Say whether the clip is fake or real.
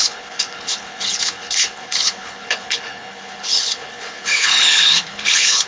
fake